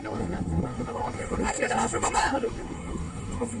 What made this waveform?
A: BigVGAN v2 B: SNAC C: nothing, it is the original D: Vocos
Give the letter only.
B